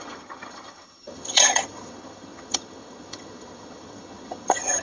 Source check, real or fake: fake